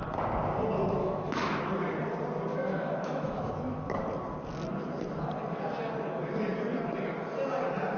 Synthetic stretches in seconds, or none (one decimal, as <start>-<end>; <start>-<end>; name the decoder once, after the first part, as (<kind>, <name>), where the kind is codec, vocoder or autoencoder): 1.0-1.6 (autoencoder, DAC-VAE); 2.5-3.4